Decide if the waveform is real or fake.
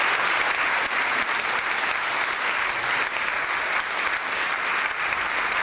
real